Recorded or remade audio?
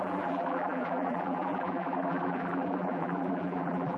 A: remade